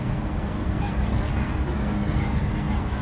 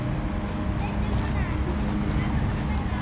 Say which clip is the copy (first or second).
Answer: first